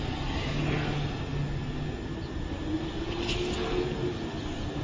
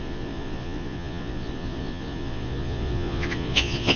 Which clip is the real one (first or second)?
first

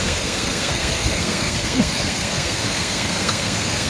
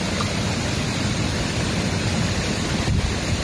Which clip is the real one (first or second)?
second